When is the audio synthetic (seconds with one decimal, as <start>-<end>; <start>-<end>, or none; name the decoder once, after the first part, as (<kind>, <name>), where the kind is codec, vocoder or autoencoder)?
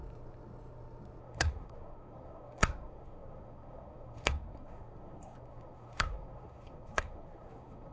1.2-7.9 (codec, SNAC)